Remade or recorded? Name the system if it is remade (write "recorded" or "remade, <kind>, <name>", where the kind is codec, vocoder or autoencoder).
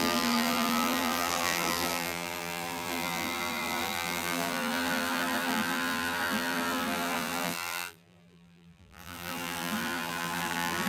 remade, vocoder, BigVGAN v2